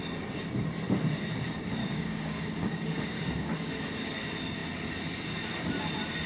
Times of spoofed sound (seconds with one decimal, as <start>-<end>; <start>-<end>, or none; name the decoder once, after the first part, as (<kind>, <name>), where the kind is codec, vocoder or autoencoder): 1.8-3.7 (codec, DAC)